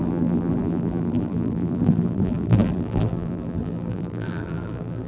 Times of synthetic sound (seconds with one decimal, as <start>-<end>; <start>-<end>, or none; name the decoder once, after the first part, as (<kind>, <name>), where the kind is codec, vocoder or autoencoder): 0.0-5.1 (vocoder, BigVGAN v2)